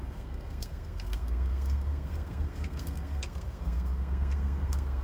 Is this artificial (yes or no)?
yes